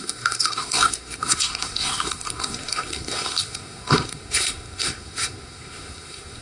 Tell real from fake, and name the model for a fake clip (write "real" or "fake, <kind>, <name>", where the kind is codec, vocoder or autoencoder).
fake, codec, SNAC